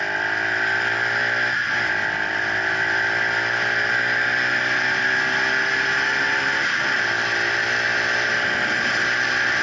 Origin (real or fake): real